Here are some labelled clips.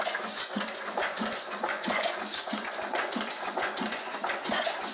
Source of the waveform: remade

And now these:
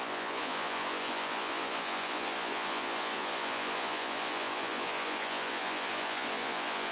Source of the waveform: remade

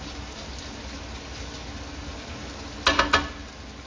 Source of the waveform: recorded